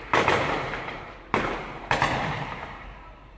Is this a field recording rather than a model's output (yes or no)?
no